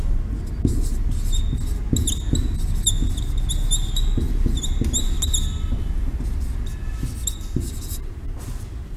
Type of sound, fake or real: real